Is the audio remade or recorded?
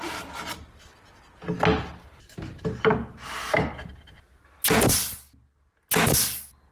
recorded